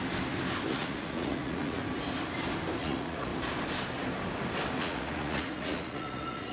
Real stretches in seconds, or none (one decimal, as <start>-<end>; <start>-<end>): 0.0-0.7; 1.8-2.8; 3.3-4.8